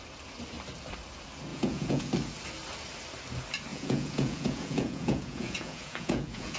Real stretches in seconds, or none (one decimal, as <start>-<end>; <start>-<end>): 0.0-1.5; 2.1-3.7